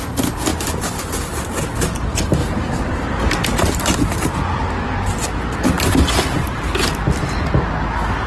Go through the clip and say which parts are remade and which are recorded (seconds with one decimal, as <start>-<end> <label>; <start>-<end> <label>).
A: 0.0-0.5 recorded; 0.5-1.2 remade; 1.2-2.4 recorded; 2.4-3.6 remade; 3.6-8.3 recorded